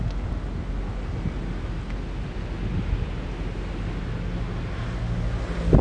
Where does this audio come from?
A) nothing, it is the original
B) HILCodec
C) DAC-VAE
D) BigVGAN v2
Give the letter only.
A